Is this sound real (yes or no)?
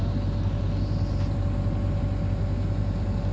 yes